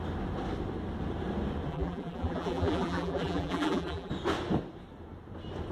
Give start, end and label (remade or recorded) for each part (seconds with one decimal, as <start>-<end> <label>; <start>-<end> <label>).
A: 0.0-1.7 recorded; 1.7-4.1 remade; 4.1-5.7 recorded

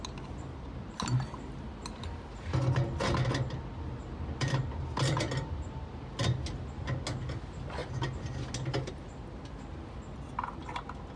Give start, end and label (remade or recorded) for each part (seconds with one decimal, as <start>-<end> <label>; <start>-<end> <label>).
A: 0.0-11.2 recorded

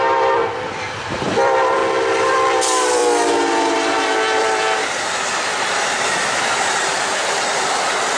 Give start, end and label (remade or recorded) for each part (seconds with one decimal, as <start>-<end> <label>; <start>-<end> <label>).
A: 0.0-1.8 remade; 1.8-2.3 recorded; 2.3-3.0 remade; 3.0-4.4 recorded; 4.4-8.2 remade

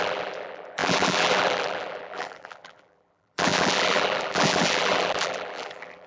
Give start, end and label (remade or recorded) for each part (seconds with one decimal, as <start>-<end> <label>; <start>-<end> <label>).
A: 0.0-6.1 remade

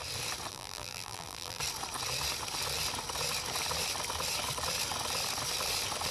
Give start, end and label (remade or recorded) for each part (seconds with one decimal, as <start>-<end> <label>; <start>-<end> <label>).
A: 0.0-0.5 recorded; 0.5-1.6 remade; 1.6-6.1 recorded

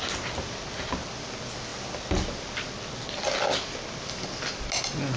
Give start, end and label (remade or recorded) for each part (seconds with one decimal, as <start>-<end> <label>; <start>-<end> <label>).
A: 0.0-5.2 recorded